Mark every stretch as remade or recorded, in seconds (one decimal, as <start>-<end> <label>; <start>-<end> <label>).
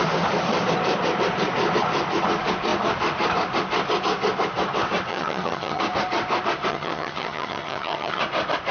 0.0-5.1 recorded; 5.1-5.8 remade; 5.8-6.7 recorded; 6.7-8.2 remade; 8.2-8.7 recorded